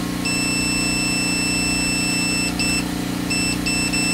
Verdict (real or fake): real